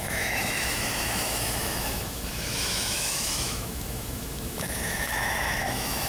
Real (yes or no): no